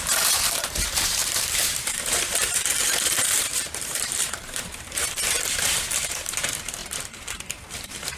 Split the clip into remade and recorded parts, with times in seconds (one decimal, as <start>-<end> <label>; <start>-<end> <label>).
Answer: 0.0-8.2 remade